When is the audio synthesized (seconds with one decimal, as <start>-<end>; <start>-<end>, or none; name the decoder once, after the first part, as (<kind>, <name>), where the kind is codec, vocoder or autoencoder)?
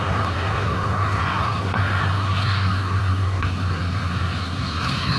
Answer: 0.0-5.2 (codec, SNAC)